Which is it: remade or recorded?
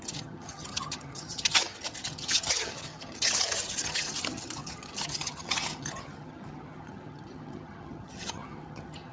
remade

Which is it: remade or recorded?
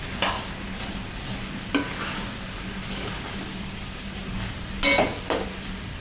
recorded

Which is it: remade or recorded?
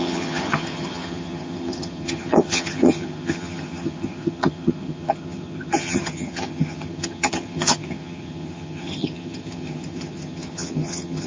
remade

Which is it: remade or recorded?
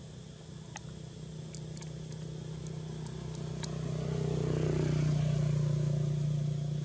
recorded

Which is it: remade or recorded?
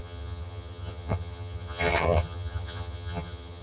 remade